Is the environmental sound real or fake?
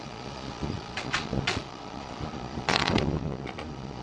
fake